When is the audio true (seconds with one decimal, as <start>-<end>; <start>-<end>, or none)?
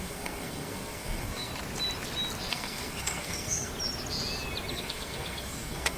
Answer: 1.5-2.5; 3.7-4.7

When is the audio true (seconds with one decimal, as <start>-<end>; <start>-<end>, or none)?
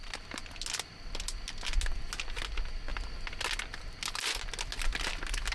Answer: 0.0-5.5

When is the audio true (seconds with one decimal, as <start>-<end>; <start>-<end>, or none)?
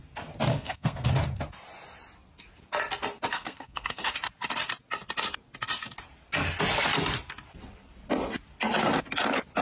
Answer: 0.0-0.5; 1.1-3.3; 4.1-9.6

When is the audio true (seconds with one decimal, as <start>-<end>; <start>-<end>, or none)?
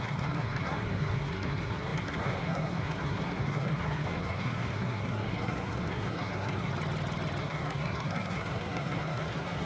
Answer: 6.7-7.4